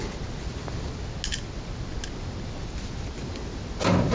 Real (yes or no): yes